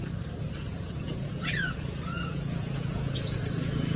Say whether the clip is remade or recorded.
remade